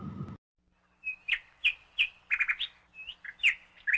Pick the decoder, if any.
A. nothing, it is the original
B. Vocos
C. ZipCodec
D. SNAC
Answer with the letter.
A